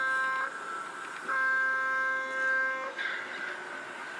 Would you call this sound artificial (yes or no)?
no